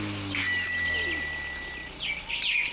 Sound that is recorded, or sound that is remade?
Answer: recorded